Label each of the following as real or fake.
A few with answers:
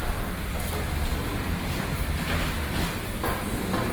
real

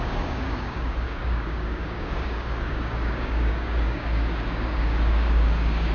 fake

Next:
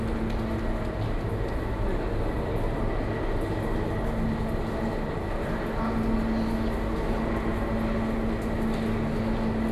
real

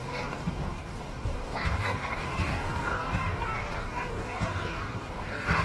fake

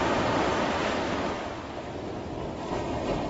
real